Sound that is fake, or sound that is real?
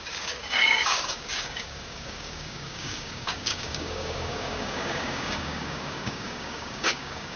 fake